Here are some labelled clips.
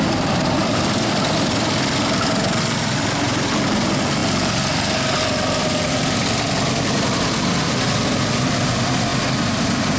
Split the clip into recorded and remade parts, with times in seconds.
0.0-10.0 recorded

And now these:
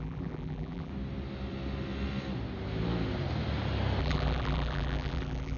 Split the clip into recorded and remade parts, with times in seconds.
0.0-0.9 remade; 0.9-4.0 recorded; 4.0-5.6 remade

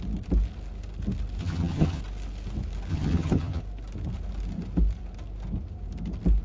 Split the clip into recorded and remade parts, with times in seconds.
0.0-1.4 recorded; 1.4-2.0 remade; 2.0-2.9 recorded; 2.9-3.6 remade; 3.6-6.4 recorded

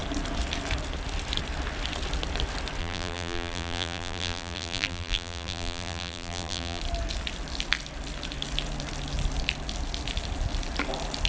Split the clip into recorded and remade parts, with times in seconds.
0.0-2.8 recorded; 2.8-6.8 remade; 6.8-11.3 recorded